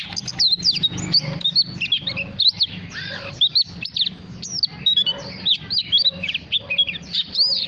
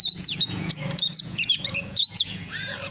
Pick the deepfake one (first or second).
second